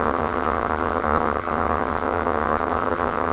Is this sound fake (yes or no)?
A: yes